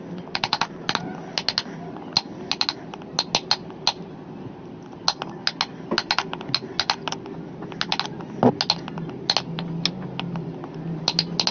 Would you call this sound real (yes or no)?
yes